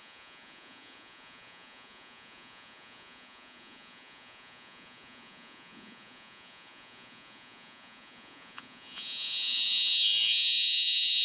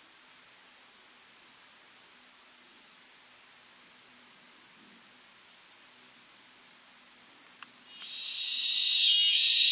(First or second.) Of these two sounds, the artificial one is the first